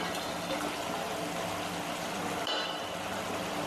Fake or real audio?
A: real